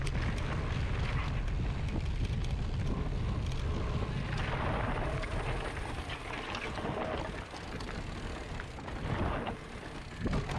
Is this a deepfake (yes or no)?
no